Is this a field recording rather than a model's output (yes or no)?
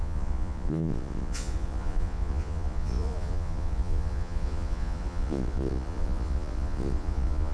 no